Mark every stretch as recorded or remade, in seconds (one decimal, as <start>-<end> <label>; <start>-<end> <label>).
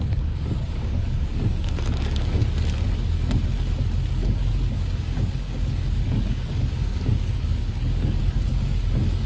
0.0-2.4 remade; 2.4-4.1 recorded; 4.1-9.3 remade